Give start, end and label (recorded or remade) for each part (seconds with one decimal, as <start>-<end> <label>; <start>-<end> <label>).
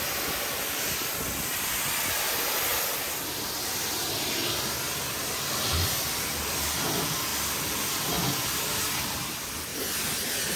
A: 0.0-10.6 recorded